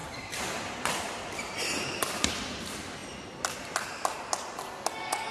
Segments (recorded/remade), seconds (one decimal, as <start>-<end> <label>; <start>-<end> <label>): 0.0-2.3 remade; 2.3-3.0 recorded; 3.0-4.6 remade; 4.6-5.3 recorded